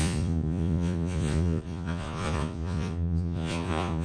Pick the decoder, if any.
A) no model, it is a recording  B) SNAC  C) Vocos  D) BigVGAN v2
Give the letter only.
C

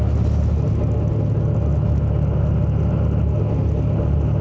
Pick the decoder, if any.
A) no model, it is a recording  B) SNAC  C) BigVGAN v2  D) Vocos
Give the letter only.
A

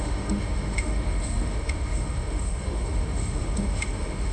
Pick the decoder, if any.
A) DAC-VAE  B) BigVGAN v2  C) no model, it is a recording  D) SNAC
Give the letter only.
A